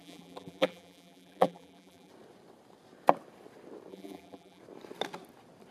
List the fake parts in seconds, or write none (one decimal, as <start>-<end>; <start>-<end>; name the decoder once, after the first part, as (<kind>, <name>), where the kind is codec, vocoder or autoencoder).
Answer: 0.0-2.1 (vocoder, BigVGAN v2); 3.9-4.6